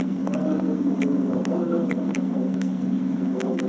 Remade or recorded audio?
remade